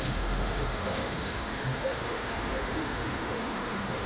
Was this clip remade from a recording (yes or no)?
yes